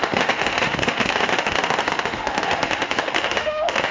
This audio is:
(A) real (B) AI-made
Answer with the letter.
B